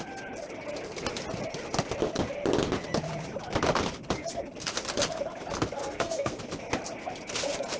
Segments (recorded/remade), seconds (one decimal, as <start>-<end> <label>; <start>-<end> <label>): 0.0-5.8 recorded; 5.8-6.4 remade; 6.4-7.8 recorded